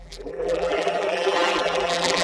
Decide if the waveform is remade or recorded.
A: remade